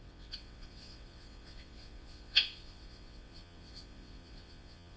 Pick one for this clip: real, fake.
fake